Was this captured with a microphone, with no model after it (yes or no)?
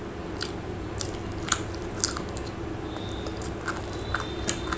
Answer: yes